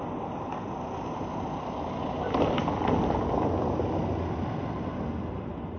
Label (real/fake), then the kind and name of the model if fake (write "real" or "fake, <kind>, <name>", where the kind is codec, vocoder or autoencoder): real